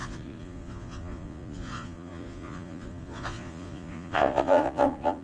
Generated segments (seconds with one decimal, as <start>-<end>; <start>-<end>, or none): 0.0-5.2